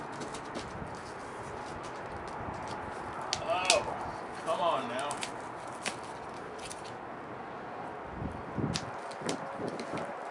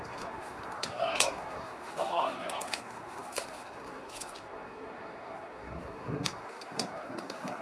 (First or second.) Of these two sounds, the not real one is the second